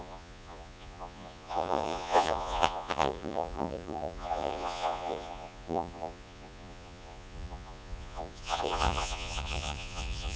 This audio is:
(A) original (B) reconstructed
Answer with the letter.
B